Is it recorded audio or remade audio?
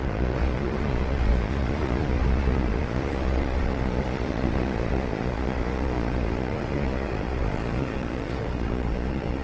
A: remade